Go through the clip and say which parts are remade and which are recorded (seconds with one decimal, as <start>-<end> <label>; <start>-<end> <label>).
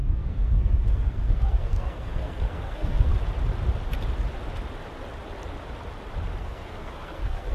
0.0-3.1 remade; 3.1-6.4 recorded; 6.4-7.5 remade